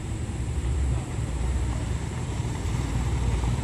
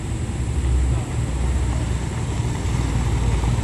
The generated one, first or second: first